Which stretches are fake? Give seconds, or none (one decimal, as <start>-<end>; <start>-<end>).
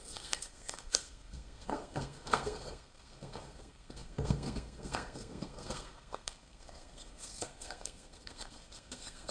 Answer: 0.0-9.3